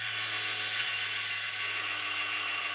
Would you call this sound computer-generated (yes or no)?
no